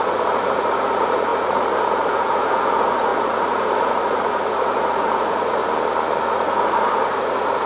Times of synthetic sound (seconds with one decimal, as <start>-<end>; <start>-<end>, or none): 0.0-5.6; 6.3-7.7